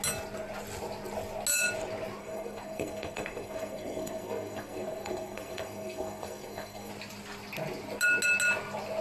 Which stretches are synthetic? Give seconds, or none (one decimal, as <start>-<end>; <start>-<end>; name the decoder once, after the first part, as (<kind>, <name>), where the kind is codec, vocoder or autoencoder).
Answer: 2.2-6.9 (codec, SNAC)